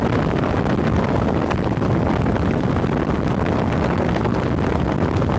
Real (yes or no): yes